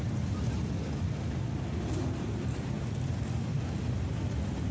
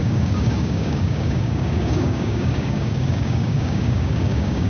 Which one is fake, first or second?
second